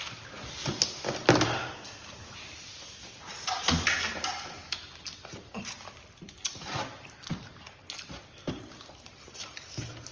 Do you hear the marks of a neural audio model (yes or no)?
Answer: no